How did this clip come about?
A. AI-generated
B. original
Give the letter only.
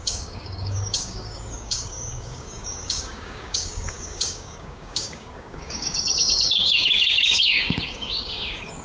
A